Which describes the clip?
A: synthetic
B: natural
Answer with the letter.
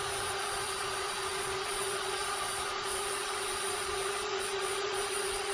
A